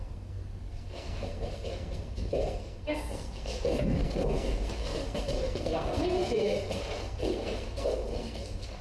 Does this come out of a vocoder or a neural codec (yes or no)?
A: yes